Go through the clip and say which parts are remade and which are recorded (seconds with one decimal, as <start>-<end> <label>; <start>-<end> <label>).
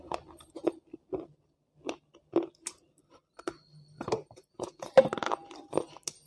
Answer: 0.0-4.2 recorded; 4.2-4.9 remade; 4.9-6.3 recorded